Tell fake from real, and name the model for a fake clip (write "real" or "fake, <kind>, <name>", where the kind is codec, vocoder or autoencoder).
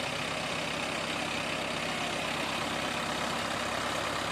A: real